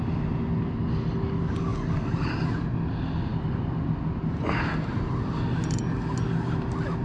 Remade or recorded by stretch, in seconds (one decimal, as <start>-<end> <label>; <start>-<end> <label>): 0.0-7.0 recorded